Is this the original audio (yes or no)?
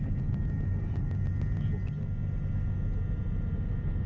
yes